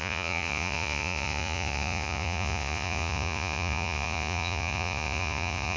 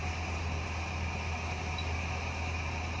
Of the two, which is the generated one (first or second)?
first